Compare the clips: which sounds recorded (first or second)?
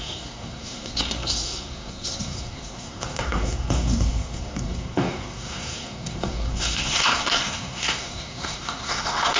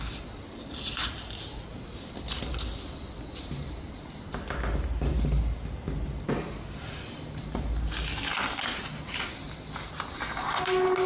second